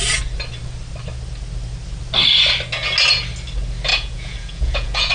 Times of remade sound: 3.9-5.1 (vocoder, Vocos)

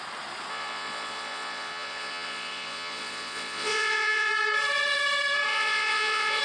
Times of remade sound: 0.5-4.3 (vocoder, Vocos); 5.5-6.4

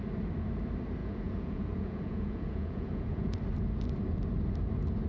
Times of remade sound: 1.0-3.4 (vocoder, Vocos)

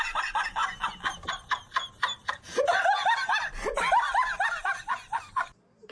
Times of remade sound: none